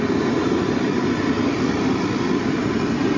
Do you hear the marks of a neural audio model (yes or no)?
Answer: no